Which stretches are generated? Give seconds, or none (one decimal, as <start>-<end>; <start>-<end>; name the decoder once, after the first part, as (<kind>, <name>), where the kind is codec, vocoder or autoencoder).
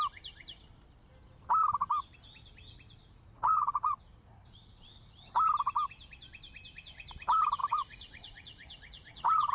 3.0-5.3 (vocoder, Vocos); 7.6-9.5